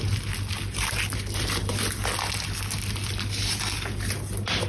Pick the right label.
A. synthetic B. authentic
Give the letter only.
B